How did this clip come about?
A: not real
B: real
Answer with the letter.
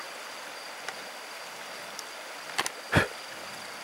B